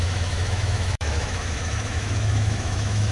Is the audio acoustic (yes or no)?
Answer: no